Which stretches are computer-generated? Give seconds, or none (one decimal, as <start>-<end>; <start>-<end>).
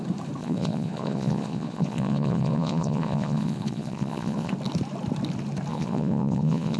0.4-4.5; 5.7-6.8